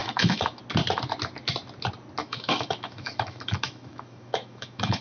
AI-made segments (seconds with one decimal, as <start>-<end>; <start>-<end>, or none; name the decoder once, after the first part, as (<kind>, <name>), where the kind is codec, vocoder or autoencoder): 0.0-0.6 (autoencoder, DAC-VAE); 2.2-5.0